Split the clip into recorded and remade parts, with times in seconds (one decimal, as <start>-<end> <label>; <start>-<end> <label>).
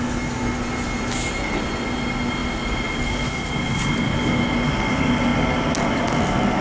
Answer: 0.0-6.6 recorded